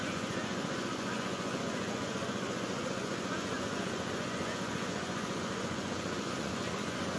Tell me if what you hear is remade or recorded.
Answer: remade